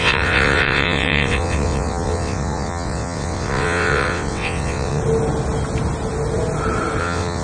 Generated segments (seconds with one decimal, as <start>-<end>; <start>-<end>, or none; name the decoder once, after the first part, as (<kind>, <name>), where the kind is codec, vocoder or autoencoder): 0.0-5.0 (vocoder, WaveNeXt); 7.0-7.4

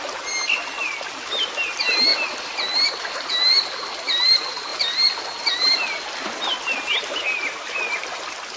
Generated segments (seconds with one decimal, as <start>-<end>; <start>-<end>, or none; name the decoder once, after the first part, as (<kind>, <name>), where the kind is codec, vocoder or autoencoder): none